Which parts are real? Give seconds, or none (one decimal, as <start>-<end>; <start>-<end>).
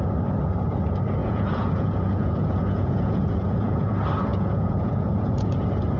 0.0-1.2; 3.9-4.3; 5.6-6.0